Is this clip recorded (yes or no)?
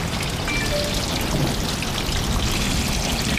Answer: yes